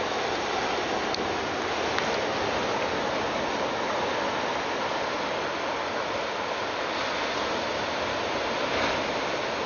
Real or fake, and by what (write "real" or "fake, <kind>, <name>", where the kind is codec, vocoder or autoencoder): real